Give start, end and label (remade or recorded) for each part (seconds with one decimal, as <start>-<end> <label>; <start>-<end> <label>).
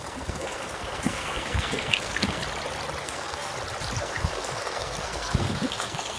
0.0-2.4 remade; 2.4-3.0 recorded; 3.0-3.5 remade; 3.5-4.0 recorded; 4.0-6.2 remade